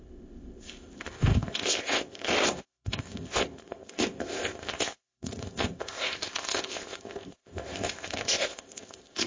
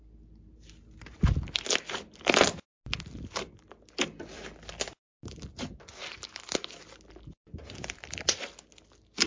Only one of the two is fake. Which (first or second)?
first